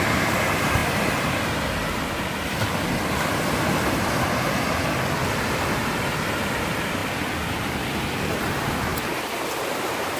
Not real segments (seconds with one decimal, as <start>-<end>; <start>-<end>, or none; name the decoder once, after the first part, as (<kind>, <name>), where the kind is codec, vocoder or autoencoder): none